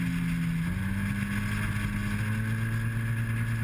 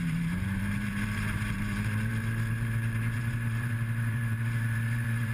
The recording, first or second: first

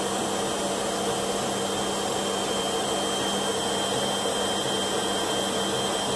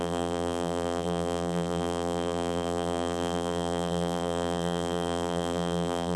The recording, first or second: first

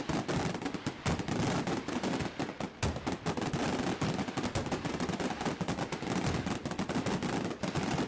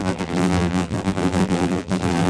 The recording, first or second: first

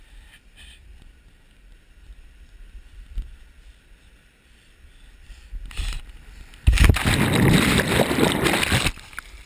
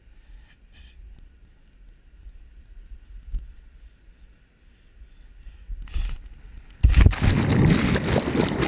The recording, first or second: second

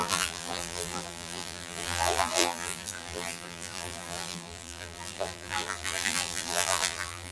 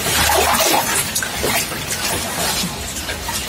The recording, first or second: second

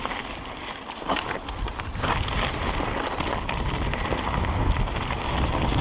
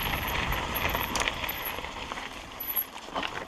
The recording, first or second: first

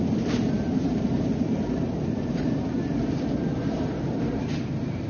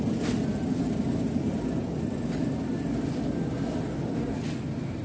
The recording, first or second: second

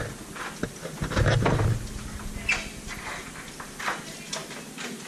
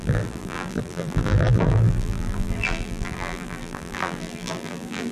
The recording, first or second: first